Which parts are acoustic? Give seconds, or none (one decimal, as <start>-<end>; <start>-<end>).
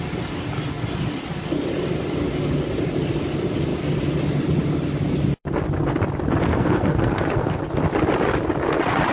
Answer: 0.0-6.5; 7.6-9.1